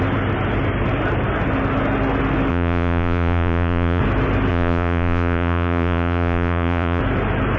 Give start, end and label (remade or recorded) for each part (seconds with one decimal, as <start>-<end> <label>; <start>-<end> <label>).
0.0-2.5 recorded; 2.5-4.0 remade; 4.0-4.5 recorded; 4.5-7.0 remade; 7.0-7.6 recorded